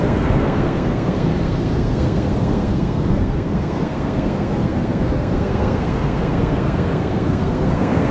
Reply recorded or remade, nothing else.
remade